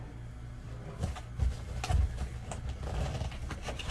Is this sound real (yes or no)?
yes